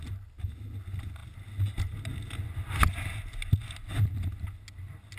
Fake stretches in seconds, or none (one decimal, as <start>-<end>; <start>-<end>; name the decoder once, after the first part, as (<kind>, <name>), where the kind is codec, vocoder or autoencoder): none